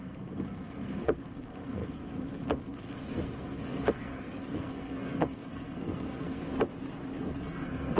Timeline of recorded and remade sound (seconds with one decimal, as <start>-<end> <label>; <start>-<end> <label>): 0.0-6.5 remade; 6.5-7.2 recorded; 7.2-8.0 remade